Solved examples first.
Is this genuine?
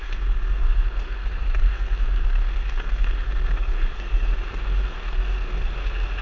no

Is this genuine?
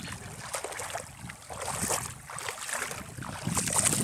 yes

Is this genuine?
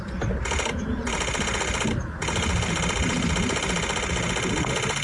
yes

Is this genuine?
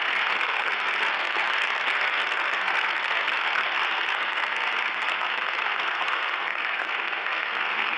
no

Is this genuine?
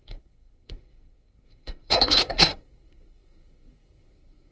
no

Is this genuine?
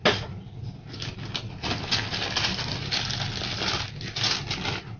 yes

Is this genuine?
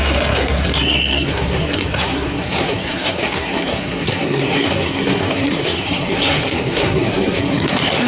no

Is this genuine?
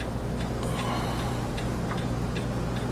yes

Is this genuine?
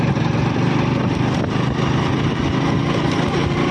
yes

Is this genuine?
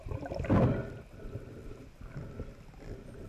yes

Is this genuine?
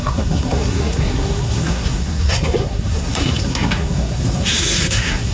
no